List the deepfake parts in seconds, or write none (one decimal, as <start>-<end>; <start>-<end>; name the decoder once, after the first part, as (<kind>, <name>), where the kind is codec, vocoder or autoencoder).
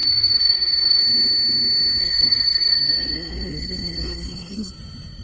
0.0-1.0 (codec, SNAC); 2.0-4.7